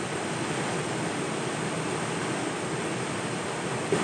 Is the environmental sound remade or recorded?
recorded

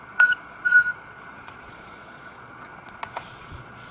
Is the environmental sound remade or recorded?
remade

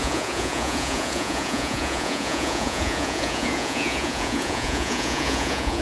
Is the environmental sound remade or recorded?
remade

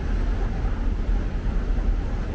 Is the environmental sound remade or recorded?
recorded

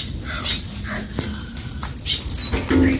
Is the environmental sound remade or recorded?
recorded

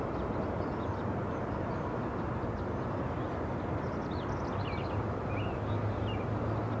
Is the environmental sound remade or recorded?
recorded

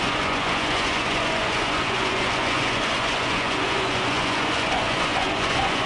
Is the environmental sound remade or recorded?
remade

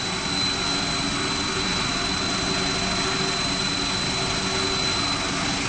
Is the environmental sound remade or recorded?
recorded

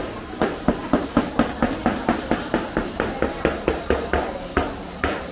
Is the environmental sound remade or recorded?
recorded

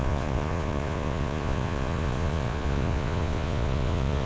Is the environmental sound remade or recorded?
remade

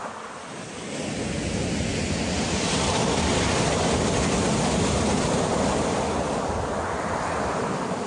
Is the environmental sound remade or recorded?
recorded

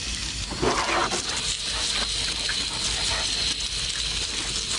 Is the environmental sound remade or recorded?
recorded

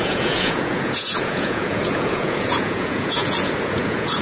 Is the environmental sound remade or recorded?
remade